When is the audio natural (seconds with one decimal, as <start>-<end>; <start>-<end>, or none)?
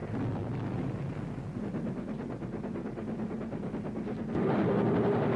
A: 0.0-5.4